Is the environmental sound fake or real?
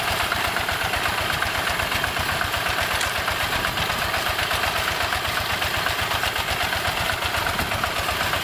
real